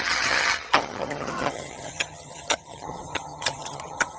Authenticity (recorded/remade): remade